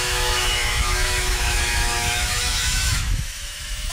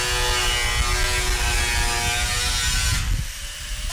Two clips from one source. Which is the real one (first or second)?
second